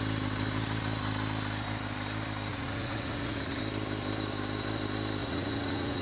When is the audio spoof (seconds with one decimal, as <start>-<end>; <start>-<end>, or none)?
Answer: 2.5-3.6; 5.2-6.0